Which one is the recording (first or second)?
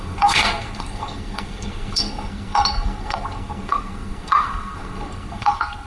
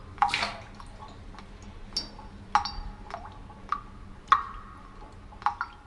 second